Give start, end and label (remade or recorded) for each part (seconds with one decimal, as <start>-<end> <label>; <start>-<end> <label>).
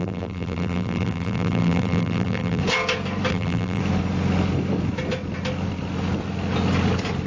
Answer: 0.0-2.6 remade; 2.6-3.3 recorded; 3.3-3.8 remade; 3.8-7.3 recorded